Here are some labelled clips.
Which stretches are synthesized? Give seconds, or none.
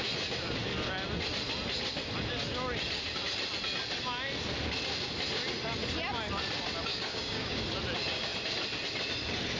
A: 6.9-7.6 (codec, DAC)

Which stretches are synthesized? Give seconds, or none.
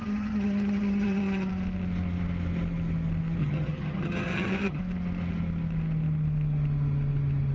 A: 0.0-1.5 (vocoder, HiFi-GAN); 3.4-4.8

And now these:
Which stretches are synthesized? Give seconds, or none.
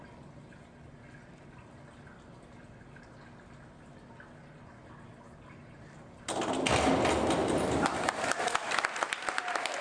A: 7.4-9.8 (vocoder, BigVGAN v2)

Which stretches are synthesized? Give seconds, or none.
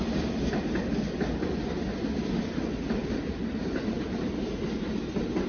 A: 3.0-4.2 (vocoder, BigVGAN v2)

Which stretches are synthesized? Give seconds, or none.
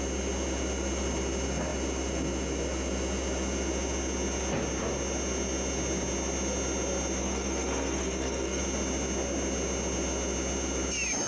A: 7.2-8.6 (codec, SNAC)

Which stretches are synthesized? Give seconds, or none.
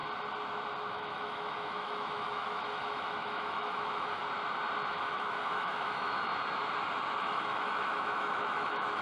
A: 0.9-4.2 (autoencoder, DAC-VAE); 4.9-6.3; 7.2-9.0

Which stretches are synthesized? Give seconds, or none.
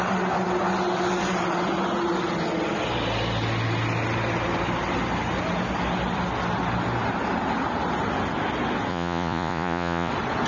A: 8.9-10.1 (vocoder, Vocos)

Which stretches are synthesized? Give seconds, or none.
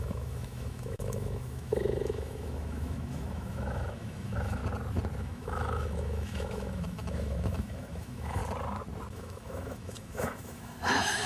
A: 0.0-4.6 (autoencoder, DAC-VAE); 5.2-8.4; 9.1-11.3